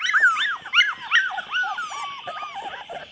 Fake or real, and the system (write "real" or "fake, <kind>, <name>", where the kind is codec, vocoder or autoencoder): real